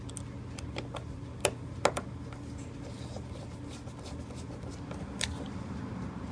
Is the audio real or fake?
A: real